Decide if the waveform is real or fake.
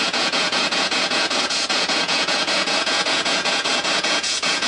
fake